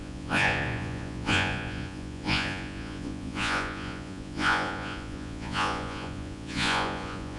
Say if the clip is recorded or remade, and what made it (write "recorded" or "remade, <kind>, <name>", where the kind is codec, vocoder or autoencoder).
remade, vocoder, Vocos